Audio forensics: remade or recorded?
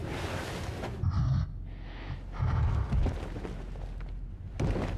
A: recorded